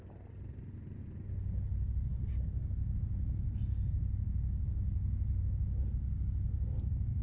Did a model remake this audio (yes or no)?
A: no